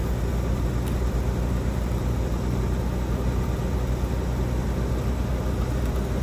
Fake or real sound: real